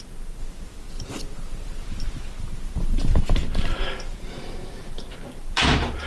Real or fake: fake